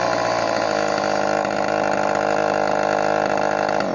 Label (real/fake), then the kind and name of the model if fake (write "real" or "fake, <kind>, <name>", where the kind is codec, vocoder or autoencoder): real